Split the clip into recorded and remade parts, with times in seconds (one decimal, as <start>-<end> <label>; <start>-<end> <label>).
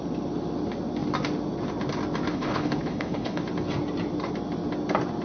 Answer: 0.0-2.3 recorded; 2.3-3.4 remade; 3.4-5.2 recorded